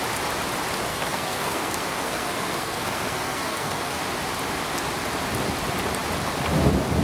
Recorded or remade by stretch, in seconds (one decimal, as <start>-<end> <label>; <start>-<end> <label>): 0.0-0.9 recorded; 0.9-4.0 remade; 4.0-7.0 recorded